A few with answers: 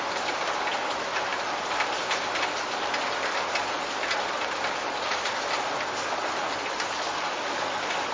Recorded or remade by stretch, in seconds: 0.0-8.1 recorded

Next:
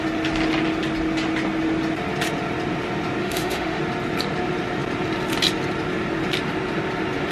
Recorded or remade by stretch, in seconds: 0.0-3.2 recorded; 3.2-3.8 remade; 3.8-7.3 recorded

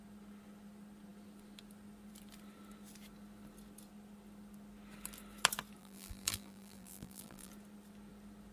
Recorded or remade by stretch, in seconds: 0.0-5.8 recorded; 5.8-7.5 remade; 7.5-8.5 recorded

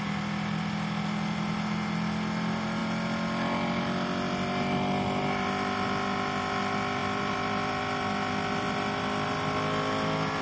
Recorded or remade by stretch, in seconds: 0.0-7.0 recorded; 7.0-7.7 remade; 7.7-10.4 recorded

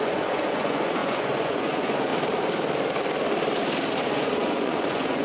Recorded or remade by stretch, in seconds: 0.0-2.1 remade; 2.1-4.0 recorded; 4.0-5.2 remade